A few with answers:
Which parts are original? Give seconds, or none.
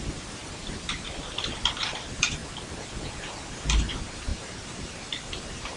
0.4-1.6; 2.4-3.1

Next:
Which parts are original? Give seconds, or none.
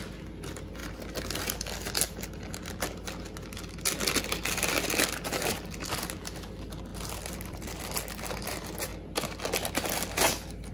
0.0-6.9; 7.8-8.9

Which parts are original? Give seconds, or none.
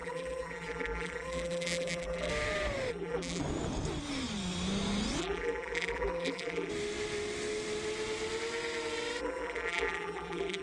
2.3-2.9; 3.4-5.2; 6.7-9.2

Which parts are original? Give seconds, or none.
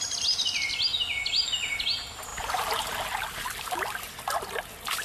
0.0-5.0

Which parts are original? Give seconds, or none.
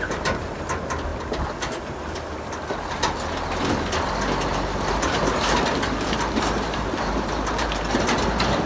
0.0-4.5; 8.0-8.7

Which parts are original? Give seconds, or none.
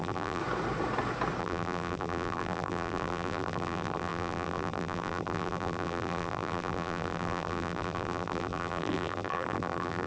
0.4-1.4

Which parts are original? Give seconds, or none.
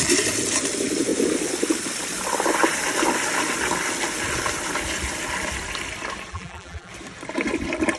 0.0-6.3; 6.9-8.0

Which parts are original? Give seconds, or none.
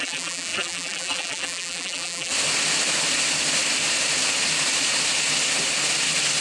2.3-6.4